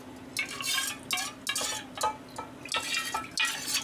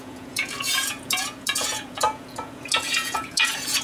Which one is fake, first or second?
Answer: second